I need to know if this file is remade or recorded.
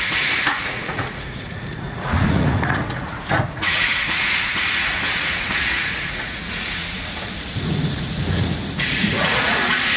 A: remade